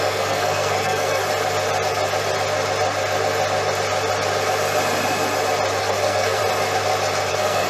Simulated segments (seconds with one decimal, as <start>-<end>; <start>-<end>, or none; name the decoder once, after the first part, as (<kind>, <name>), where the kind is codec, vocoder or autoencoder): 0.0-1.2 (codec, SNAC); 5.8-6.4; 7.3-7.7